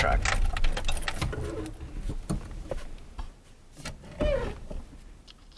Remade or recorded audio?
recorded